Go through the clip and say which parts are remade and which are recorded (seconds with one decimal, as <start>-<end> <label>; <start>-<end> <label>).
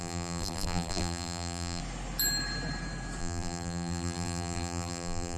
0.0-1.8 remade; 1.8-3.2 recorded; 3.2-5.4 remade